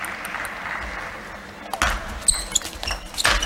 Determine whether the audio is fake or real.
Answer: real